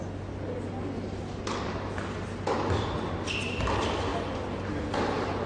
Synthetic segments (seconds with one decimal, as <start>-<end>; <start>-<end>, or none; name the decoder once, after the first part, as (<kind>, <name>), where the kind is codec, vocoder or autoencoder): none